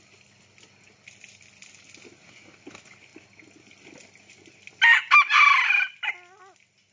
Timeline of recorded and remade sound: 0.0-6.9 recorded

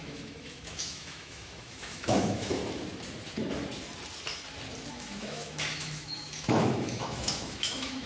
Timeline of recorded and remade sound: 0.0-2.6 remade; 2.6-4.9 recorded; 4.9-8.1 remade

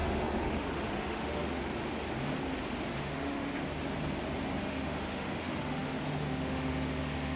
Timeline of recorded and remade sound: 0.0-1.6 remade; 1.6-3.0 recorded; 3.0-3.6 remade; 3.6-4.6 recorded; 4.6-7.4 remade

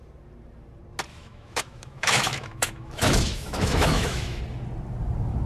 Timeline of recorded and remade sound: 0.0-1.1 recorded; 1.1-4.4 remade; 4.4-5.5 recorded

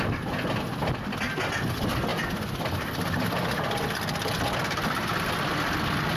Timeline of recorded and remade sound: 0.0-6.2 recorded

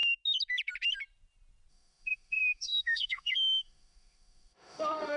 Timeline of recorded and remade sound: 0.0-1.7 recorded; 1.7-5.2 remade

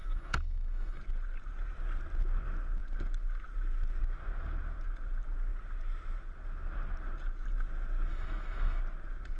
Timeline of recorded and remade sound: 0.0-1.0 remade; 1.0-8.1 recorded; 8.1-8.8 remade; 8.8-9.4 recorded